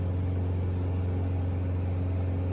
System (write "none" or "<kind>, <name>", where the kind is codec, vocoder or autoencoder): none